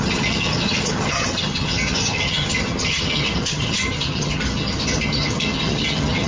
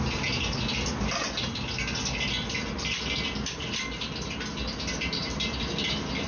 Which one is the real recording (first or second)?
second